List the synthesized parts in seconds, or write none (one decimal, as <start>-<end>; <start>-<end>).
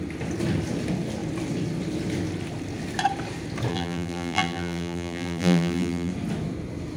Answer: 3.7-6.1